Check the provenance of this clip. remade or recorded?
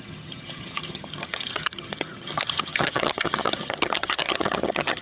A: remade